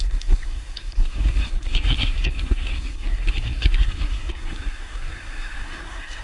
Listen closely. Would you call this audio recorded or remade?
remade